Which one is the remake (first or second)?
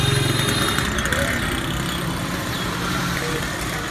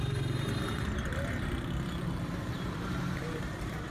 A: second